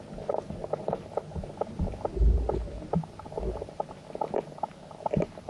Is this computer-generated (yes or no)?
no